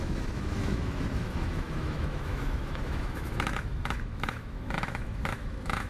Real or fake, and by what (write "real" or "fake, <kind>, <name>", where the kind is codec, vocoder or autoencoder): fake, autoencoder, DAC-VAE